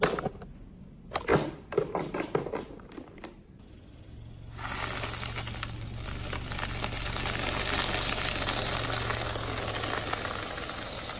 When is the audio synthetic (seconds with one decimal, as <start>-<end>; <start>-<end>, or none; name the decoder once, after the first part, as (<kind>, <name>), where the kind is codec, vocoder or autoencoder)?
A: none